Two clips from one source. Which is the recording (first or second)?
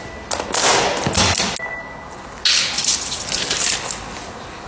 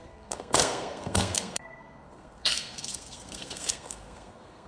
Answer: first